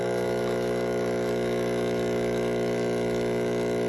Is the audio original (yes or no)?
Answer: no